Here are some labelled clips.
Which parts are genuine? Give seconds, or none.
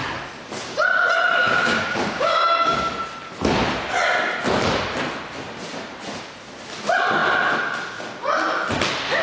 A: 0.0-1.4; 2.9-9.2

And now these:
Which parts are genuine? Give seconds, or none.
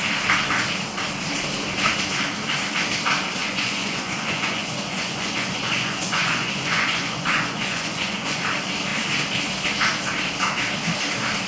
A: 0.0-3.4; 8.4-11.5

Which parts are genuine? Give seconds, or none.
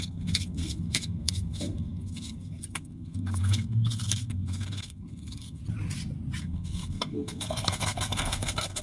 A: 5.6-6.4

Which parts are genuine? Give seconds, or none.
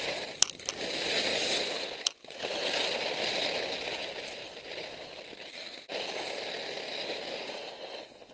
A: 0.0-8.3